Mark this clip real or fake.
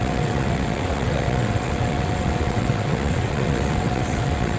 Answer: fake